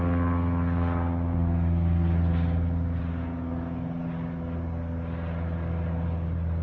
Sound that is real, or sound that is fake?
real